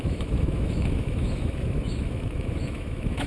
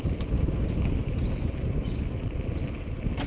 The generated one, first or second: first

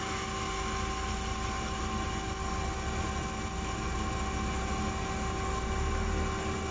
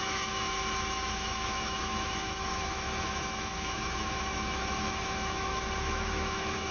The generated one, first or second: second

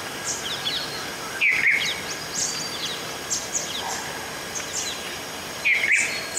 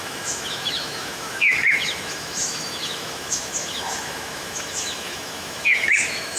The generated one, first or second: second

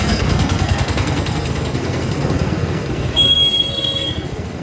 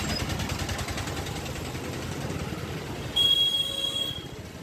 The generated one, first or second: first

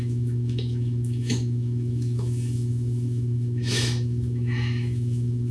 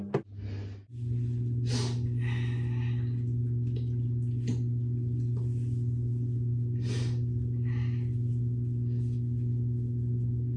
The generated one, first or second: first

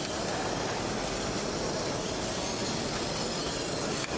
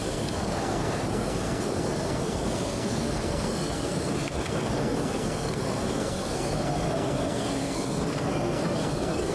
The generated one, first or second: second